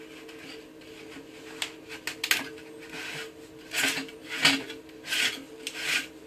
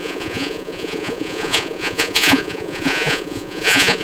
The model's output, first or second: second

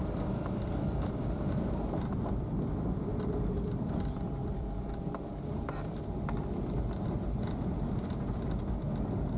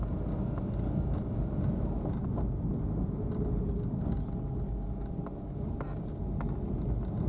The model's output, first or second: first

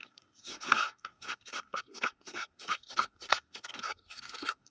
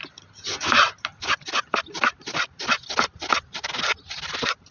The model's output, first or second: first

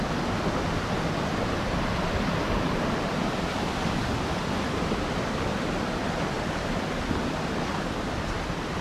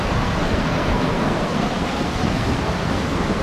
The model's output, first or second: second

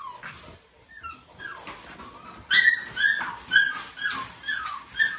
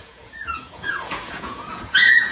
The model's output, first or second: second